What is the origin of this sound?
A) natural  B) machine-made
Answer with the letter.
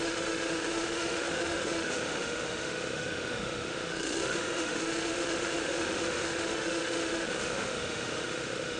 B